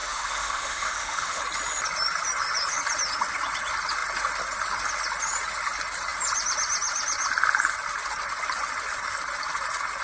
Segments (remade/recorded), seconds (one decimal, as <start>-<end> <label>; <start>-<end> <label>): 0.0-1.4 remade; 1.4-10.0 recorded